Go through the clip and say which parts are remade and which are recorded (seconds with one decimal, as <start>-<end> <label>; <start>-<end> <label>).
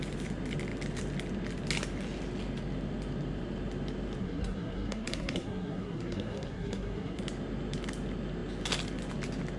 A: 0.0-4.2 recorded; 4.2-7.2 remade; 7.2-9.6 recorded